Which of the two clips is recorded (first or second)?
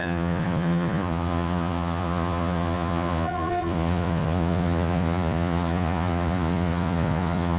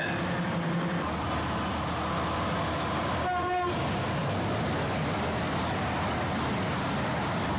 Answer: second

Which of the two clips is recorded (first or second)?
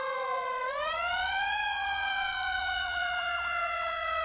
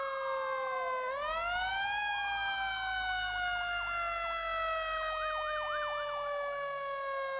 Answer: second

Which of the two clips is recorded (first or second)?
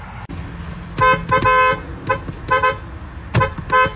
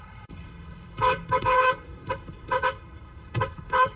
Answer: first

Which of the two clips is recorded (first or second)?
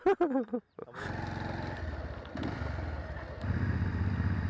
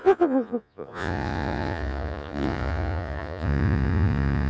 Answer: first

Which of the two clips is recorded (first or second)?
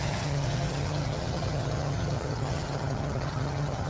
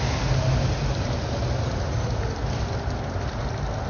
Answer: second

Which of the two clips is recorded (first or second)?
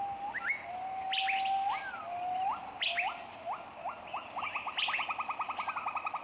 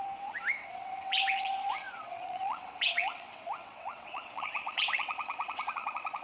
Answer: first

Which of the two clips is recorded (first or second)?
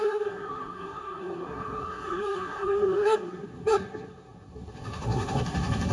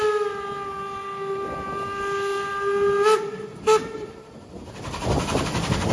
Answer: second